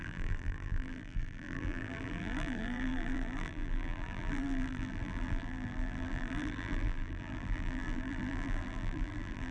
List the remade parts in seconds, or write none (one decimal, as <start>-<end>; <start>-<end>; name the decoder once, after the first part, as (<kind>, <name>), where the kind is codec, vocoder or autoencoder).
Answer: 0.0-9.5 (vocoder, BigVGAN v2)